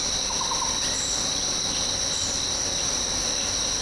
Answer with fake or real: real